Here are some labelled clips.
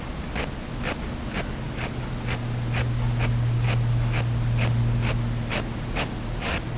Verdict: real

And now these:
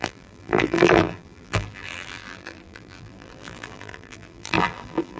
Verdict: fake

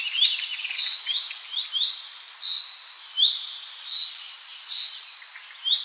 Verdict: fake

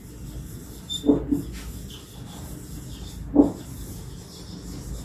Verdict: real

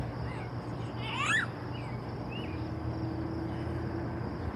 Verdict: real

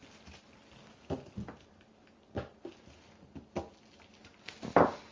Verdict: real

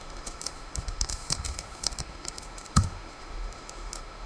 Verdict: fake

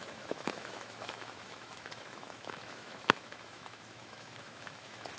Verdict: fake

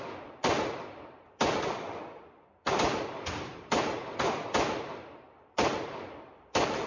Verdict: fake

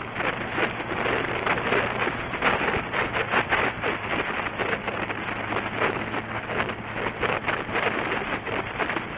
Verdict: real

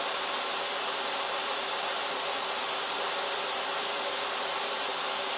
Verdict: real